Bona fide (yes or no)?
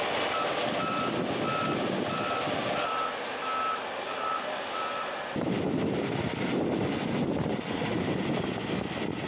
yes